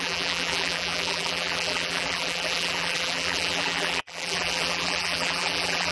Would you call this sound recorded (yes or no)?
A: no